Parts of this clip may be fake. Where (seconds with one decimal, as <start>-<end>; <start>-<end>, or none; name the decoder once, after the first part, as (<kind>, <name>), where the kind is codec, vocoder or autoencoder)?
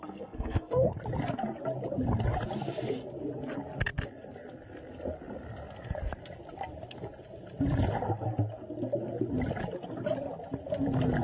0.0-1.0 (codec, SNAC)